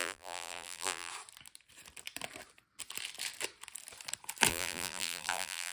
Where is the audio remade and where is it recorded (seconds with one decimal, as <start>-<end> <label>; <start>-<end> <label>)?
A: 0.0-1.1 remade; 1.1-4.5 recorded; 4.5-5.7 remade